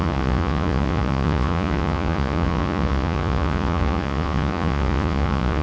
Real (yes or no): no